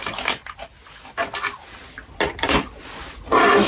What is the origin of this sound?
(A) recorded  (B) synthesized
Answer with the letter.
A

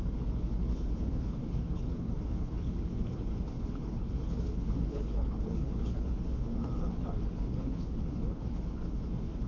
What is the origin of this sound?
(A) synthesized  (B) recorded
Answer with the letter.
A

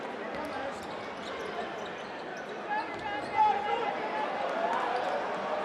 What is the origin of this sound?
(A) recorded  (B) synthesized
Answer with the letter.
A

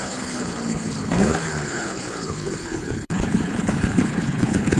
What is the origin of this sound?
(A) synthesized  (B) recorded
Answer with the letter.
A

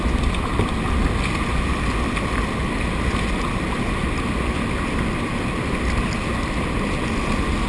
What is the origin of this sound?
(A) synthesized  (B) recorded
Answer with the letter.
B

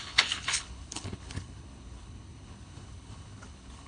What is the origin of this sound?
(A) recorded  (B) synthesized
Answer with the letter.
B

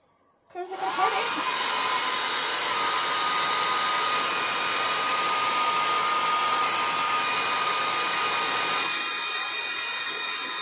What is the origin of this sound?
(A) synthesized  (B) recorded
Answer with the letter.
B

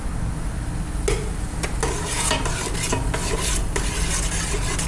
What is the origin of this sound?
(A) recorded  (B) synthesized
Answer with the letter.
A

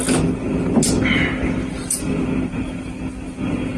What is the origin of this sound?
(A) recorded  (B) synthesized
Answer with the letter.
A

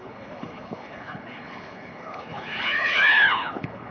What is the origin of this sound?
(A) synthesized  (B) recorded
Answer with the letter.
A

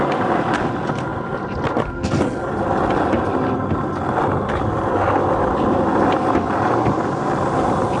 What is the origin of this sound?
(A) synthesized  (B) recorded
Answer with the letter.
B